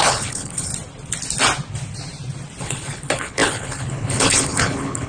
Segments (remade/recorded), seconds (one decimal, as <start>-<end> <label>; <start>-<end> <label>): 0.0-0.7 remade; 0.7-2.6 recorded; 2.6-5.1 remade